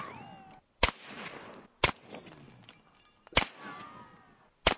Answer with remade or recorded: recorded